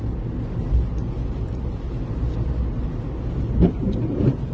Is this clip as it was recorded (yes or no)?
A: yes